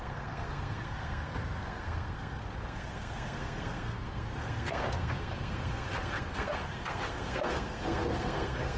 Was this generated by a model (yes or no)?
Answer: yes